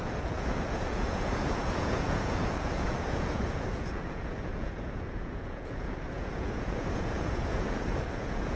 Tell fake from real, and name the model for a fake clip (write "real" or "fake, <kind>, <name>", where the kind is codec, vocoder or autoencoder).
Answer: fake, vocoder, Vocos